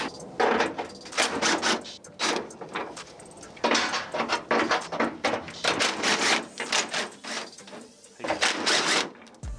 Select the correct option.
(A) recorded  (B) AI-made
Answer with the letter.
A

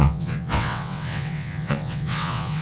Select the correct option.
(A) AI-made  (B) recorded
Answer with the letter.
A